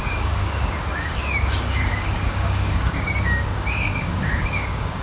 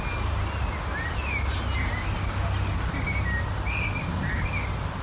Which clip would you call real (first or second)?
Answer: second